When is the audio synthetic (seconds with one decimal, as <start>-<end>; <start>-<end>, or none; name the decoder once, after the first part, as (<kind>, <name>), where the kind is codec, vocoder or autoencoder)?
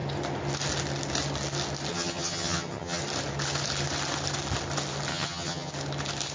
1.9-3.0 (vocoder, HiFi-GAN); 5.1-5.7